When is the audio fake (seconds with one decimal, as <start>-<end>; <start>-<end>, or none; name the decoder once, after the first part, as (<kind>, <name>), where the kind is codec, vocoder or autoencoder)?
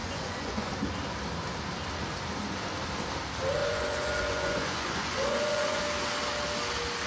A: 0.0-0.7 (vocoder, Vocos); 3.6-5.8